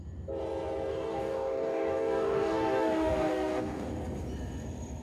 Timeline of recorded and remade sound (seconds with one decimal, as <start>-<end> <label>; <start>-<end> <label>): 0.0-0.9 recorded; 0.9-3.9 remade; 3.9-5.0 recorded

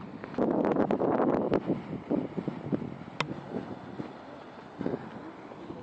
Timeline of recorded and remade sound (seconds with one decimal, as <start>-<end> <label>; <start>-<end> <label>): 0.0-5.8 recorded

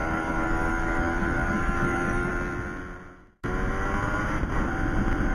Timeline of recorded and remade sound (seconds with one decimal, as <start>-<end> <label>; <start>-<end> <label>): 0.0-2.3 remade; 2.3-5.3 recorded

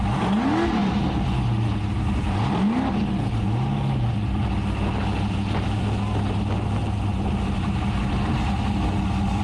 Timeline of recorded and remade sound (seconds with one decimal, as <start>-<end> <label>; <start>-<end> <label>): 0.0-9.4 recorded

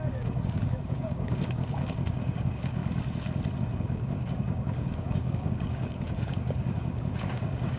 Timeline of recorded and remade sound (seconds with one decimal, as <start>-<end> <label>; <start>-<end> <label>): 0.0-2.8 remade; 2.8-3.6 recorded; 3.6-7.8 remade

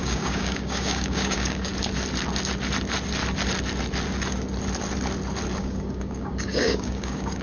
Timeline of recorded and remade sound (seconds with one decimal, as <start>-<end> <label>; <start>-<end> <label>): 0.0-1.7 remade; 1.7-5.6 recorded; 5.6-7.4 remade